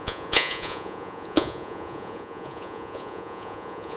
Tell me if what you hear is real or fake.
fake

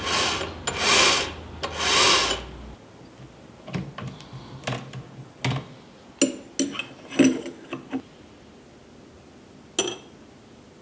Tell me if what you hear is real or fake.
real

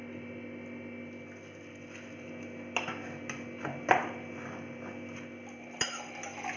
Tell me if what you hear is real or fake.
real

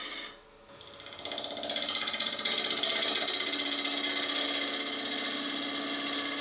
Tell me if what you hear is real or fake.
real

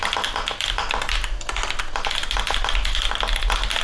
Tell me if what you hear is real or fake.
real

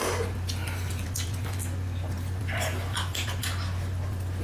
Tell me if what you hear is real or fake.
real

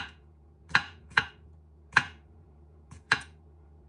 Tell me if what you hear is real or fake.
fake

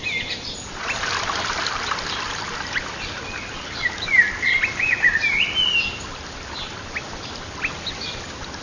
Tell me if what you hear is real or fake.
real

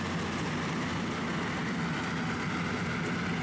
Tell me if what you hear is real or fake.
real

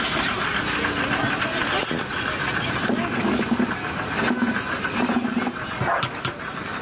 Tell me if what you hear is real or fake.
real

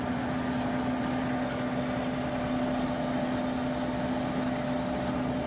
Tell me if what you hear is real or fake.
real